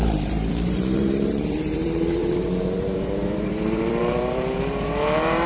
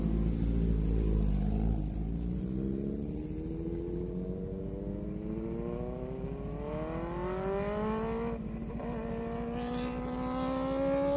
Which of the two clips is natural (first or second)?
second